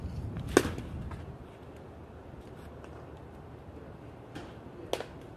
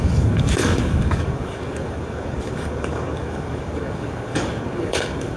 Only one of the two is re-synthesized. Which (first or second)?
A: second